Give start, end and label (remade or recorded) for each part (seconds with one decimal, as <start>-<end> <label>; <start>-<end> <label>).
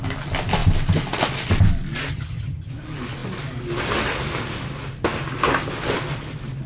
0.0-2.1 recorded; 2.1-2.7 remade; 2.7-6.7 recorded